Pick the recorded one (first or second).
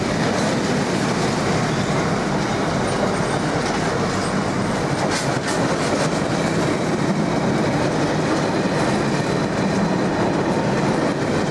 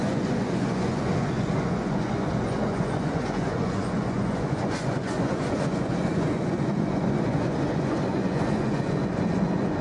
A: first